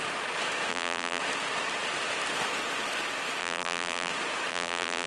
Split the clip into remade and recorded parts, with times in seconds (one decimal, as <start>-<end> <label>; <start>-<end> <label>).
0.0-0.7 recorded; 0.7-1.2 remade; 1.2-3.4 recorded; 3.4-4.1 remade; 4.1-4.5 recorded; 4.5-5.1 remade